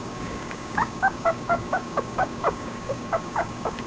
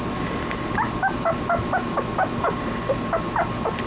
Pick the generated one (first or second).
first